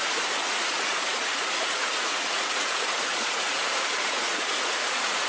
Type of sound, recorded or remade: remade